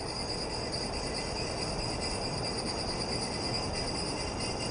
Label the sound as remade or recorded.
recorded